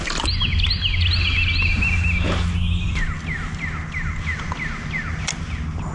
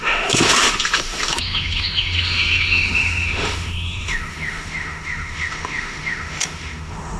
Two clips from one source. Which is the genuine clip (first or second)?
first